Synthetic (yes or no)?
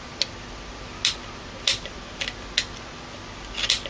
no